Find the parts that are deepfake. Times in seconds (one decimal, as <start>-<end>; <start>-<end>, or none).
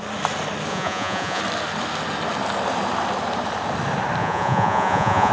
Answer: 0.7-1.4; 4.2-5.3